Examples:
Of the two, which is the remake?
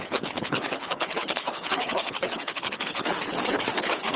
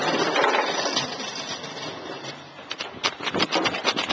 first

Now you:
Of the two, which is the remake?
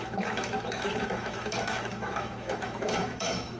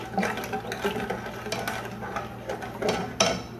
first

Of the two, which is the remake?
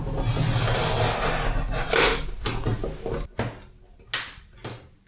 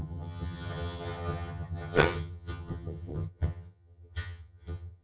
second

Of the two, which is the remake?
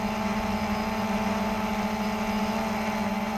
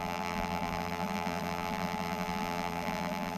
second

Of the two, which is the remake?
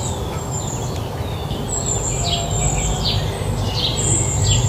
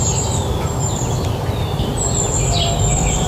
second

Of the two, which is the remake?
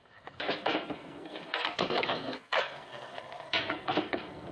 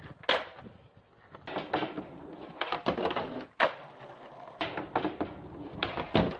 first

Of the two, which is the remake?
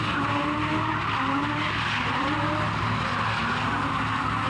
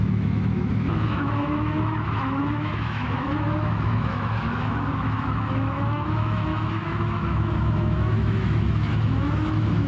second